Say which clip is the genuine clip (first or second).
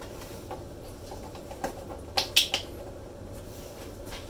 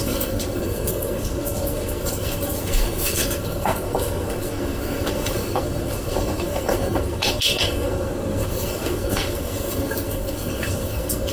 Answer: first